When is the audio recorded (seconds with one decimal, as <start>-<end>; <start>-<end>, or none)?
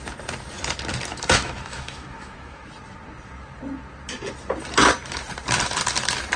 0.0-1.1; 2.7-6.4